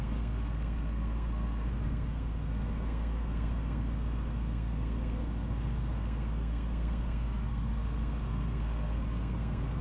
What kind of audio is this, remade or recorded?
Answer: remade